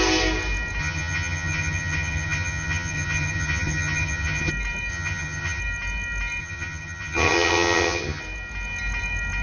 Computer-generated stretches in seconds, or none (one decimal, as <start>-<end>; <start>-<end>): 0.8-4.5; 4.9-5.6; 6.4-8.2